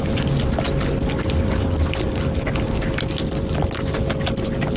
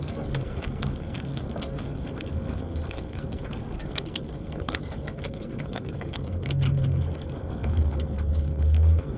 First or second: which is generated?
second